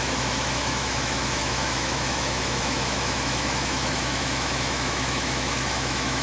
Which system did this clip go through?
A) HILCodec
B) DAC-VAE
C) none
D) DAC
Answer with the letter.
B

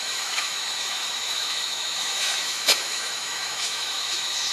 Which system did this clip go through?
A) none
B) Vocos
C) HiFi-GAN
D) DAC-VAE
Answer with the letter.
D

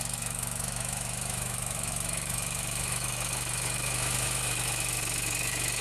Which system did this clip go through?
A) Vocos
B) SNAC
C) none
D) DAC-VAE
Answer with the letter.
D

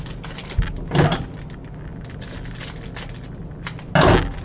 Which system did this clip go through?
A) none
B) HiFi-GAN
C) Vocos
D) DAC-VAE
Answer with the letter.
A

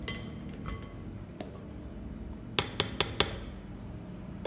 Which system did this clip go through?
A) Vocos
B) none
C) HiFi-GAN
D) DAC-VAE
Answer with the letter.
B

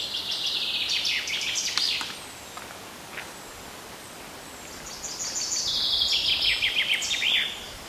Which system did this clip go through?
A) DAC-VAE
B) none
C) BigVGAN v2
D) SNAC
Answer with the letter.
B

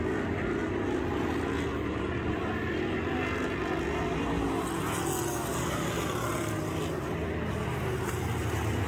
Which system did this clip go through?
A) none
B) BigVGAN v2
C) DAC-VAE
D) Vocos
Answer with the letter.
A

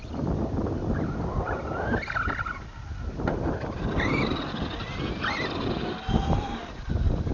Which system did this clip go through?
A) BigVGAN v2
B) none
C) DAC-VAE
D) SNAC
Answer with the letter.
B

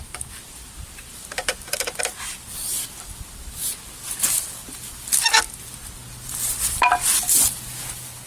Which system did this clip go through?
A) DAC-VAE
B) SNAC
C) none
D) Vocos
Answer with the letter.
C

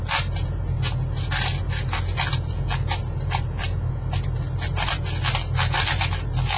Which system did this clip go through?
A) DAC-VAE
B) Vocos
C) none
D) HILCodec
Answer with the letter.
C